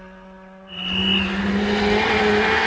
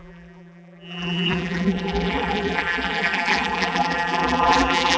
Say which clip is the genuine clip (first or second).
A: first